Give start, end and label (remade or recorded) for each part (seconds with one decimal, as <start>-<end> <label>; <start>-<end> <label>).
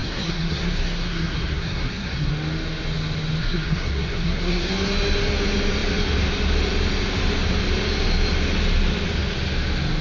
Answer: 0.0-2.3 remade; 2.3-3.4 recorded; 3.4-4.7 remade; 4.7-10.0 recorded